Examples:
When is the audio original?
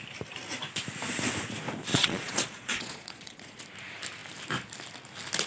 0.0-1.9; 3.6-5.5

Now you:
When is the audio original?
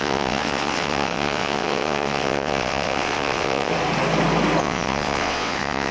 3.7-4.6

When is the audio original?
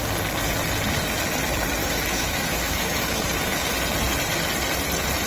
0.0-1.8; 3.2-5.3